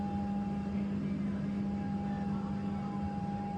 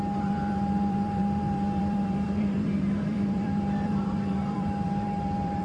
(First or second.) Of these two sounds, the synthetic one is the second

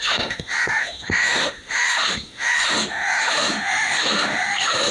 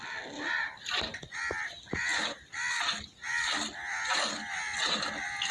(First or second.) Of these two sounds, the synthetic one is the first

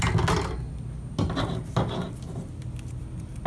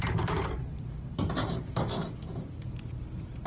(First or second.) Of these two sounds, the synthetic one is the second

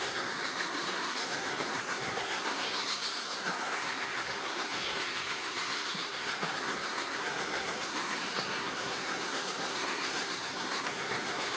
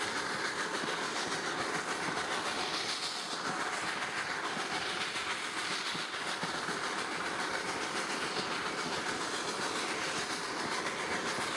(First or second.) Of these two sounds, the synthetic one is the first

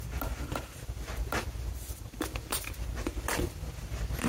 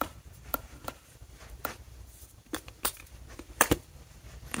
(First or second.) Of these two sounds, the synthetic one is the second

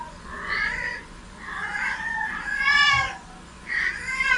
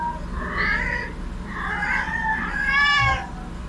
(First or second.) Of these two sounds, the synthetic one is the first